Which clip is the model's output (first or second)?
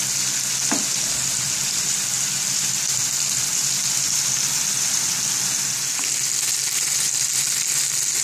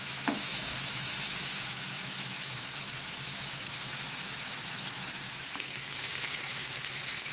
second